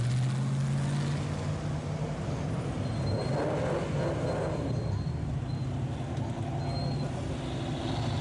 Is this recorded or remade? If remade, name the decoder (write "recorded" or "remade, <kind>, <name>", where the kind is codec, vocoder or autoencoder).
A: recorded